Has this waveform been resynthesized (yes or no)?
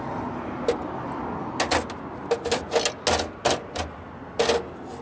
no